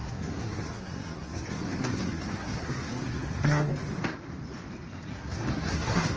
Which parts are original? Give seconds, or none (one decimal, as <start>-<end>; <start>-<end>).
3.7-5.1